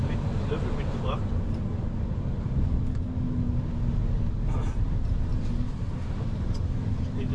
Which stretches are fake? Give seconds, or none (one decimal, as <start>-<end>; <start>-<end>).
none